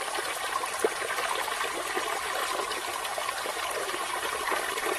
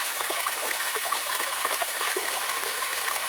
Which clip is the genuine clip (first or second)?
first